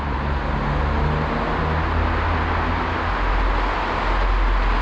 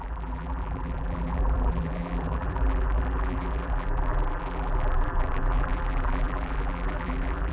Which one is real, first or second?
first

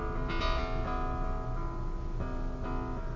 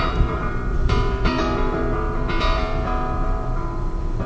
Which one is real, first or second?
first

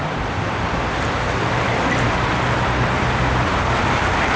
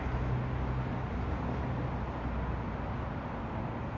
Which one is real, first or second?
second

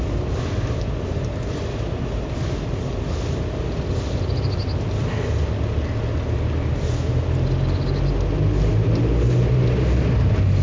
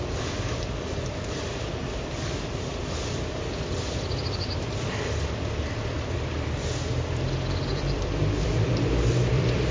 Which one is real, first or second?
first